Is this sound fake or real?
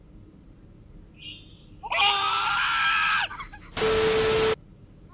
real